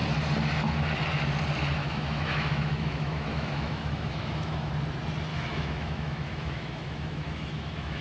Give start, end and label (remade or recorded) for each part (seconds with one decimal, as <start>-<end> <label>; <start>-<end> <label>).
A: 0.0-1.8 recorded; 1.8-4.7 remade; 4.7-5.3 recorded; 5.3-8.0 remade